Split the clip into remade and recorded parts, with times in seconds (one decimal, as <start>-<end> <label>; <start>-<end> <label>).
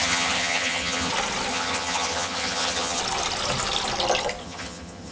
0.0-1.1 remade; 1.1-1.5 recorded; 1.5-3.0 remade; 3.0-4.4 recorded; 4.4-5.1 remade